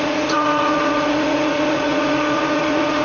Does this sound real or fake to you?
fake